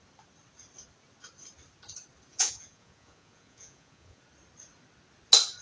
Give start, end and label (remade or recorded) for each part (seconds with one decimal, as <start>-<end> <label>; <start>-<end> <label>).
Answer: 0.0-2.3 recorded; 2.3-4.2 remade; 4.2-5.6 recorded